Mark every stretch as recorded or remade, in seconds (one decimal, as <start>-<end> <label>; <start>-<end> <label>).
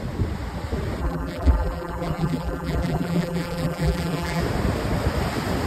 0.0-1.0 recorded; 1.0-4.4 remade; 4.4-5.7 recorded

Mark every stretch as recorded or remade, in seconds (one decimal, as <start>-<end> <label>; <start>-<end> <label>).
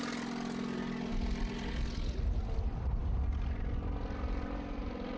0.0-5.2 recorded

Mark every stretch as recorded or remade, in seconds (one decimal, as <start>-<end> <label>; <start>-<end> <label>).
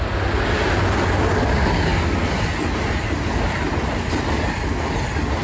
0.0-5.4 recorded